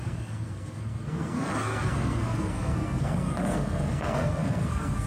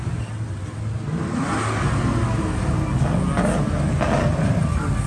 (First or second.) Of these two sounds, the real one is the second